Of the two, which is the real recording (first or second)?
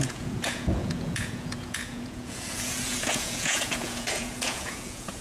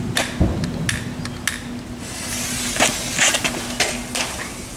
second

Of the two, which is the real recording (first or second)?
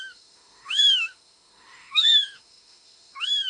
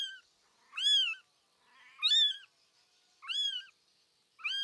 second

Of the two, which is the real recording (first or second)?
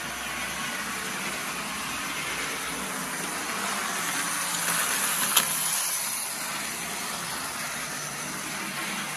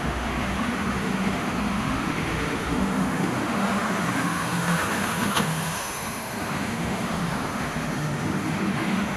first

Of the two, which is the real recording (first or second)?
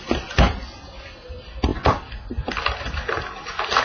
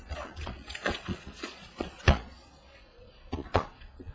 first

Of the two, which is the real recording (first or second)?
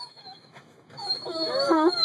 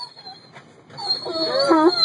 second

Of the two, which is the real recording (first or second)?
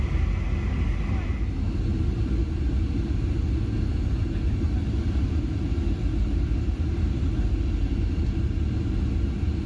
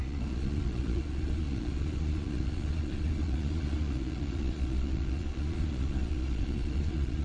first